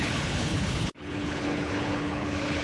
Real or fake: fake